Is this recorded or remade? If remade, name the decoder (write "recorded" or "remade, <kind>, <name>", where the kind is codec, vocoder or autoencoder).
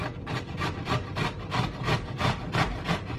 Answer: remade, vocoder, BigVGAN v2